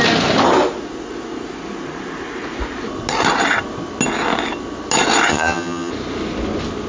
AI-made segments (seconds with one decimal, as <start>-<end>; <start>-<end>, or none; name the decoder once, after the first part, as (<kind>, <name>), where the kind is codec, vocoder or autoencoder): 5.3-5.9 (vocoder, HiFi-GAN)